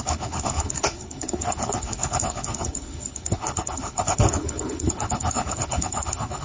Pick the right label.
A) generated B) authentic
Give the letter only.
A